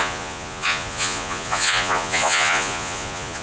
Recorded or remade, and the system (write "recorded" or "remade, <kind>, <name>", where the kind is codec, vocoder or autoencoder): remade, vocoder, Vocos